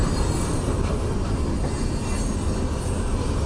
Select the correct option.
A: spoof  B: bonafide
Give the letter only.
B